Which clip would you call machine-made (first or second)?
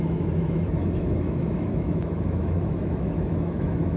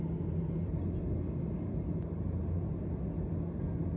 first